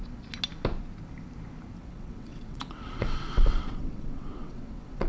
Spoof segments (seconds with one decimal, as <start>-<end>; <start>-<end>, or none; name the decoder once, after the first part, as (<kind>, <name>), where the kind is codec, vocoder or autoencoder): 1.8-5.1 (vocoder, WaveNeXt)

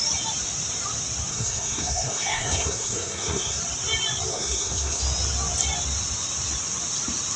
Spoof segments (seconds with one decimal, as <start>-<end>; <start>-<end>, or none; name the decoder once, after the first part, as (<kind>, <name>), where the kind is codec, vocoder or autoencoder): 1.3-3.6 (codec, SNAC); 4.3-5.0

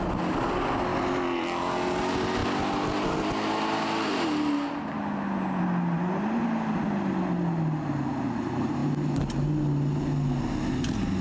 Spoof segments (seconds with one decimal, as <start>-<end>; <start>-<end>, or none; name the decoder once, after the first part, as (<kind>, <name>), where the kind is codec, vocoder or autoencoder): 0.9-1.6 (vocoder, BigVGAN v2)

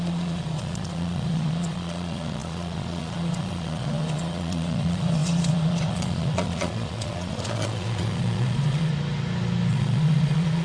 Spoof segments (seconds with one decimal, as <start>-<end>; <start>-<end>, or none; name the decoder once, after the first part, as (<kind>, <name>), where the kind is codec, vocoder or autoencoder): 0.0-8.9 (vocoder, Vocos); 9.7-10.6